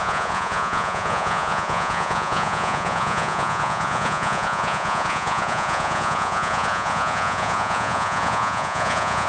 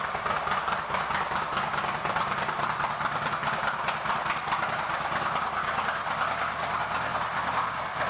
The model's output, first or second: first